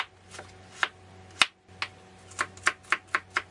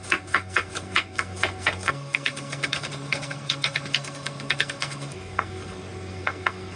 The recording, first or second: first